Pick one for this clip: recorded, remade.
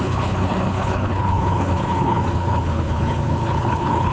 remade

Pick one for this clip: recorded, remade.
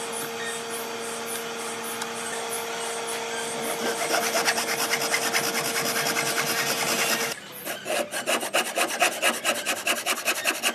recorded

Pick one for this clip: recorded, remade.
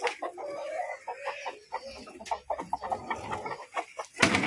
recorded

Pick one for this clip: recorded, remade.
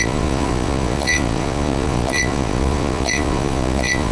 remade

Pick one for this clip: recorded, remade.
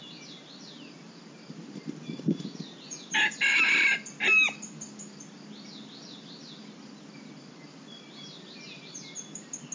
recorded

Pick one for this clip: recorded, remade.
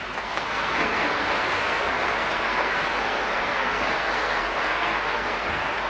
remade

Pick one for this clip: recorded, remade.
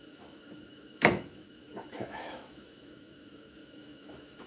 remade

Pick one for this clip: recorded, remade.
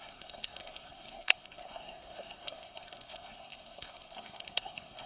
remade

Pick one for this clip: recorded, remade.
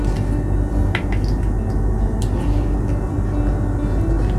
recorded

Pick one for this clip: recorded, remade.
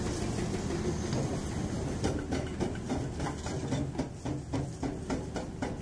recorded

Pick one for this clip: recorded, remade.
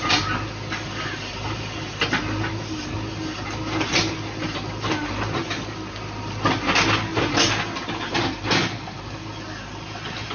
recorded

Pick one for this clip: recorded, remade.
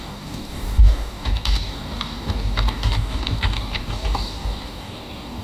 remade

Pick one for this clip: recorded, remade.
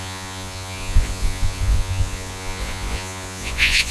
remade